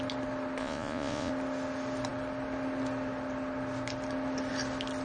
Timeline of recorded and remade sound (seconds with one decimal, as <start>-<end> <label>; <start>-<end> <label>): 0.0-0.6 recorded; 0.6-1.3 remade; 1.3-5.0 recorded